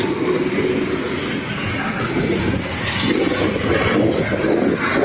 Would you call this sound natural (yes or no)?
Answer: yes